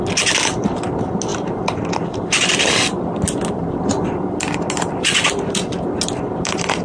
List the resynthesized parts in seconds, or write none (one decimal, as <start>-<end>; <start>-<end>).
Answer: none